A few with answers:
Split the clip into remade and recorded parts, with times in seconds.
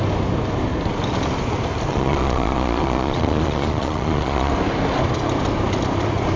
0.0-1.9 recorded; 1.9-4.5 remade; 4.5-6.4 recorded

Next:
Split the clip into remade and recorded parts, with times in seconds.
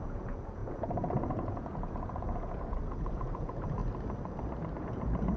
0.0-3.8 remade; 3.8-4.8 recorded; 4.8-5.4 remade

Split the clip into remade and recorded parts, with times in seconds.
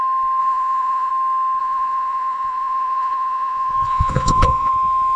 0.0-0.4 recorded; 0.4-1.1 remade; 1.1-1.6 recorded; 1.6-4.7 remade; 4.7-5.2 recorded